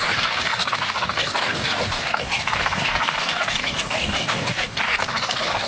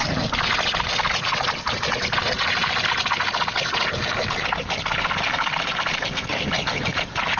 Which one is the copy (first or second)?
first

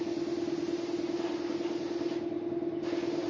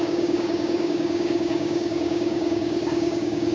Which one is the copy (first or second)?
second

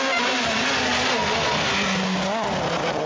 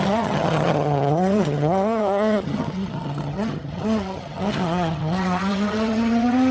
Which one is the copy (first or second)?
second